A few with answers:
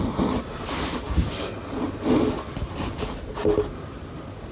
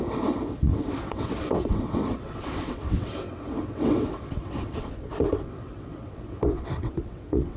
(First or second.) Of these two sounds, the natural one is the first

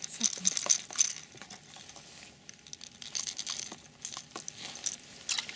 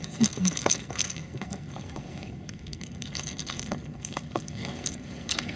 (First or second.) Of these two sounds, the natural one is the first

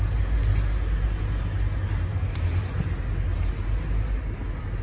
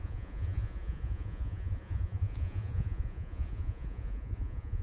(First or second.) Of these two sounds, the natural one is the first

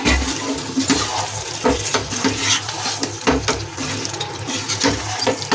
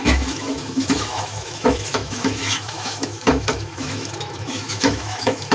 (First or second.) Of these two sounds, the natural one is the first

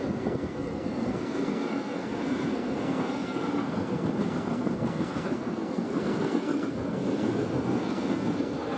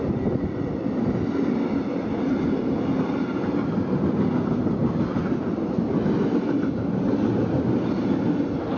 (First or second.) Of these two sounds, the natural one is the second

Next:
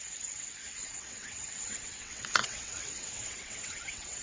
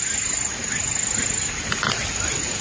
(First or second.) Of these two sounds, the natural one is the second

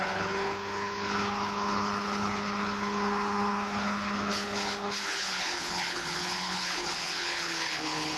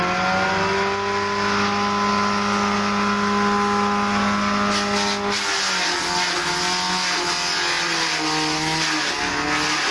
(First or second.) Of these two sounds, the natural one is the second